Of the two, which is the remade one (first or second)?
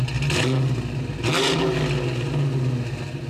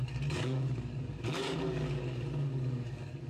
second